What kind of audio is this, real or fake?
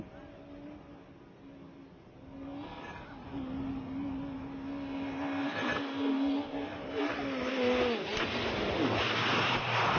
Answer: real